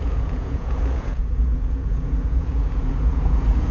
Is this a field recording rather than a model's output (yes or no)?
no